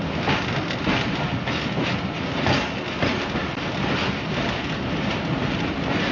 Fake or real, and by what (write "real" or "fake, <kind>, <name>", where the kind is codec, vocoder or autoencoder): real